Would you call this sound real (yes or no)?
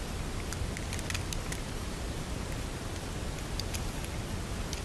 yes